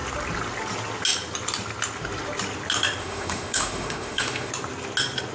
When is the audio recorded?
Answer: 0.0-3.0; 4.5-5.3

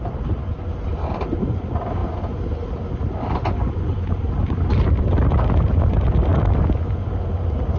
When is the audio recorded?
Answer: 0.0-7.8

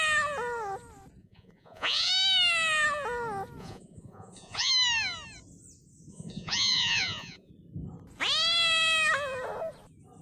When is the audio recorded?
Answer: 0.0-1.2; 2.1-3.6; 4.7-6.1; 7.5-10.2

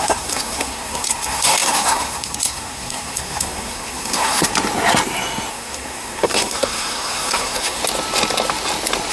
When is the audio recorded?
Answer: 4.5-5.5; 7.8-9.1

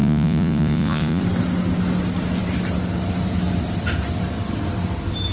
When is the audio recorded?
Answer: 1.2-5.3

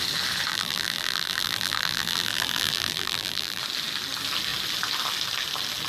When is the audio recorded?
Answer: 0.0-0.5; 3.6-5.9

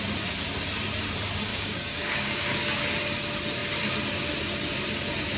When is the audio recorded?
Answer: 0.0-1.5; 2.8-5.4